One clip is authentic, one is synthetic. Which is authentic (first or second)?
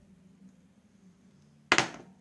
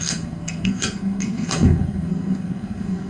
first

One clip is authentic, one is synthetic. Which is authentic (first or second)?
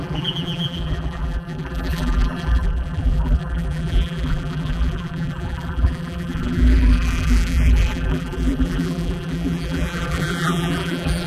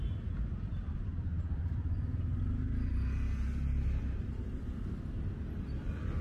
second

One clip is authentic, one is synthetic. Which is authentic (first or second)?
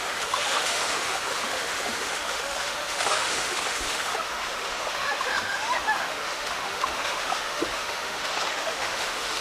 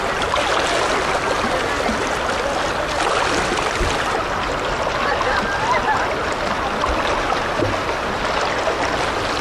second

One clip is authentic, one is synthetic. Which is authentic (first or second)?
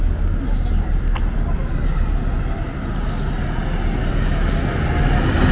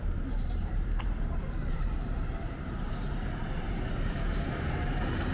first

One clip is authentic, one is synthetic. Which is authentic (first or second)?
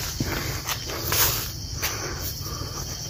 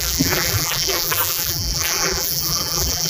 first